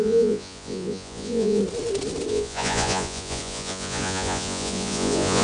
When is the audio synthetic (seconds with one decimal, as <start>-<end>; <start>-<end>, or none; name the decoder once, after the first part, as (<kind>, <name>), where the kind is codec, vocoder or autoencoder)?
0.0-1.6 (vocoder, Vocos); 2.3-5.4